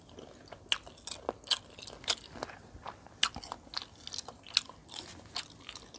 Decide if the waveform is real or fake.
real